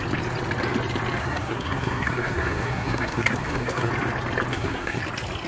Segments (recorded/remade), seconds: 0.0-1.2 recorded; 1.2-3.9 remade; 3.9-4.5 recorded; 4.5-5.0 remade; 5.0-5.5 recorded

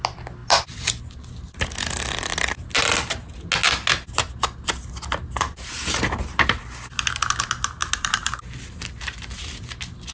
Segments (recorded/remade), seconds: 0.0-10.1 recorded

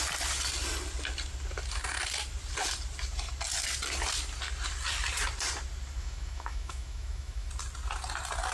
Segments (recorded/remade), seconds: 0.0-6.0 recorded; 6.0-7.5 remade; 7.5-8.5 recorded

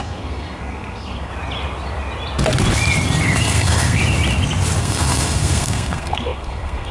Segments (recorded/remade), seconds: 0.0-1.3 remade; 1.3-3.4 recorded; 3.4-4.0 remade; 4.0-4.8 recorded; 4.8-6.9 remade

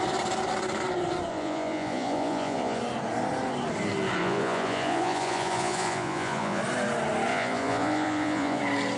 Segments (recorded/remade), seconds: 0.0-1.3 recorded; 1.3-2.8 remade; 2.8-4.2 recorded; 4.2-6.6 remade; 6.6-7.3 recorded; 7.3-8.6 remade; 8.6-9.0 recorded

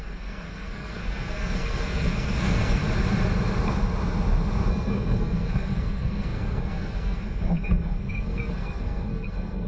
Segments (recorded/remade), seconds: 0.0-2.8 remade; 2.8-4.7 recorded; 4.7-9.7 remade

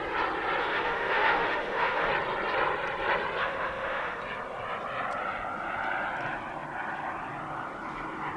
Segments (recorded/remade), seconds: 0.0-0.6 recorded; 0.6-2.1 remade; 2.1-3.4 recorded; 3.4-4.2 remade; 4.2-8.4 recorded

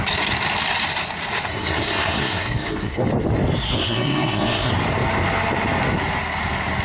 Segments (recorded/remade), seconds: 0.0-1.5 recorded; 1.5-3.1 remade; 3.1-3.7 recorded; 3.7-4.7 remade; 4.7-6.8 recorded